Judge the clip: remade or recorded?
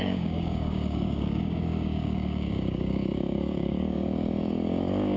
remade